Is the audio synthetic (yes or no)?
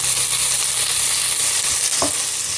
no